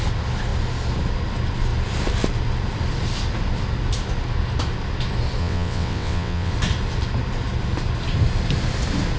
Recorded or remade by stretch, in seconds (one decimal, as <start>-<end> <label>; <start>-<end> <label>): 0.0-5.4 recorded; 5.4-6.5 remade; 6.5-9.2 recorded